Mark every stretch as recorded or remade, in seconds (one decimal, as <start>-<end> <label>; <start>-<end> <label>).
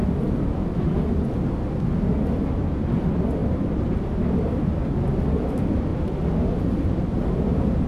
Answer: 0.0-7.9 recorded